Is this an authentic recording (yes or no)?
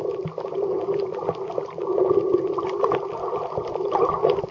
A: yes